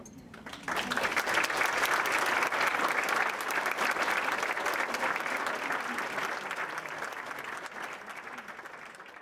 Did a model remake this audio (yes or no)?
no